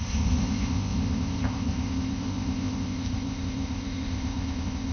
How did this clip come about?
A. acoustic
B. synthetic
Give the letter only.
B